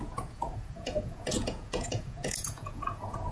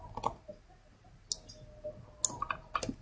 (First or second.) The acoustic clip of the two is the second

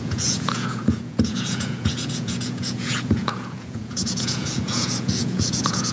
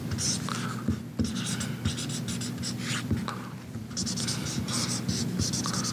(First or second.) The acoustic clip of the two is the second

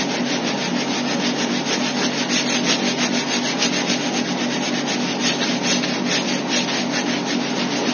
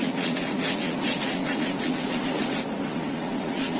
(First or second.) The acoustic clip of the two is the first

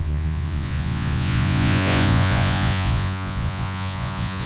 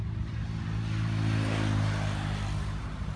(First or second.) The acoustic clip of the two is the second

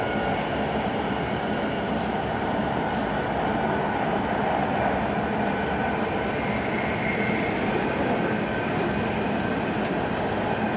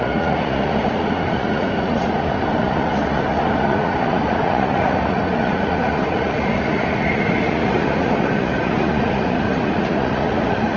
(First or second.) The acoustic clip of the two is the first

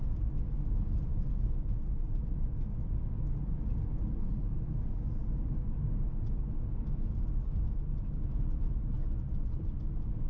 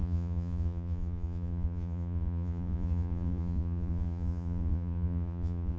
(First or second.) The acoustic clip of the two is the first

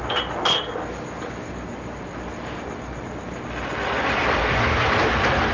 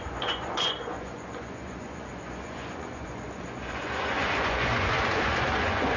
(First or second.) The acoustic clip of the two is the first